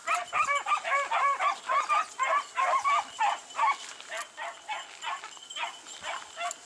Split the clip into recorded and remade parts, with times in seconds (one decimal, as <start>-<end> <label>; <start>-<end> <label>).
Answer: 0.0-6.7 recorded